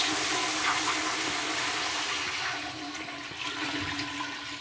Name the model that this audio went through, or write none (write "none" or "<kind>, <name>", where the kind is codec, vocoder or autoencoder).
none